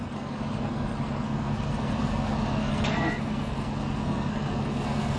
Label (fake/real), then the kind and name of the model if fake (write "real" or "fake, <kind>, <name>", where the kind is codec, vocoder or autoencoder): fake, codec, SNAC